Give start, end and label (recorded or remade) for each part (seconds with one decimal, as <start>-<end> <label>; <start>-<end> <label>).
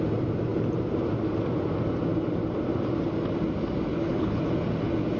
0.0-3.9 recorded; 3.9-4.4 remade; 4.4-5.2 recorded